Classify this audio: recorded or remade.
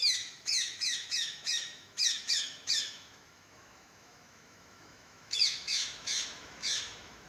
remade